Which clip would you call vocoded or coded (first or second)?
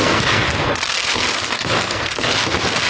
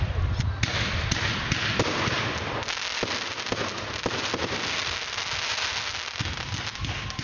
first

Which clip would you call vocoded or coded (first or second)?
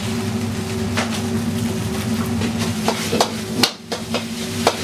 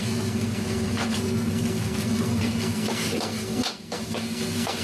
second